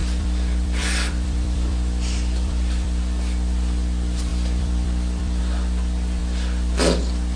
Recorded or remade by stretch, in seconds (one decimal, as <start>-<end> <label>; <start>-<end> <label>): 0.0-3.0 remade; 3.0-4.3 recorded; 4.3-5.4 remade; 5.4-7.4 recorded